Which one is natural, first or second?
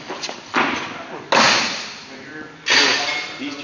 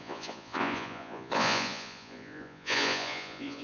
first